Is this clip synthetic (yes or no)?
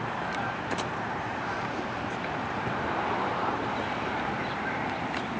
yes